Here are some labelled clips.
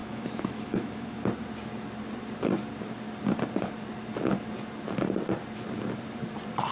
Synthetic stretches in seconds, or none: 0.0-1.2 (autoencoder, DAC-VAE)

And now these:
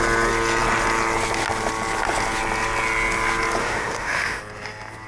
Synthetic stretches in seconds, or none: 3.6-4.4 (autoencoder, DAC-VAE)